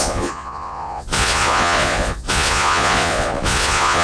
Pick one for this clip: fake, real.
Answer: fake